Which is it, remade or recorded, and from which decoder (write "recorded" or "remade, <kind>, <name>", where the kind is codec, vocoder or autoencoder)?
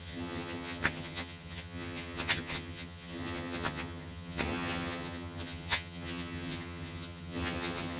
remade, vocoder, HiFi-GAN